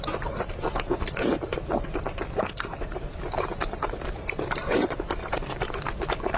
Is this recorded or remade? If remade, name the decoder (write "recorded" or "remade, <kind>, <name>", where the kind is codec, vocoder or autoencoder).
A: remade, vocoder, BigVGAN v2